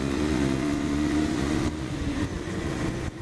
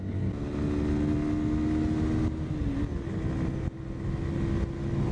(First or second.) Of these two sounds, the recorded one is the second